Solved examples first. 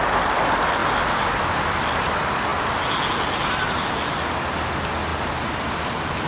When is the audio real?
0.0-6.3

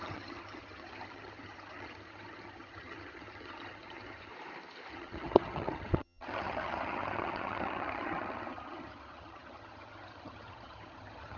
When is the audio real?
4.3-4.9

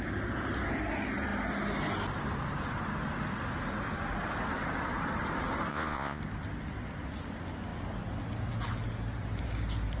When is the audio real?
0.0-5.7; 6.2-10.0

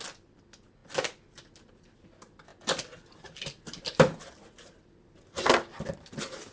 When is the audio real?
0.0-6.5

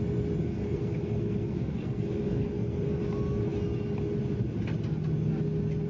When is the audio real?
0.0-0.4; 3.0-5.9

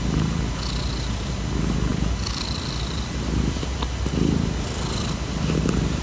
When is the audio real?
0.0-1.9; 4.1-6.0

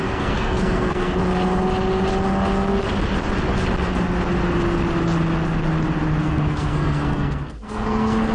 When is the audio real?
1.2-6.2